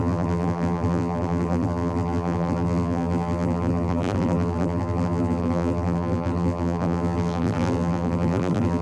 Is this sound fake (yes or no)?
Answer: yes